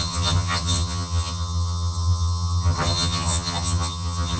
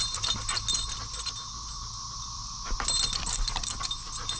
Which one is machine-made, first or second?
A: first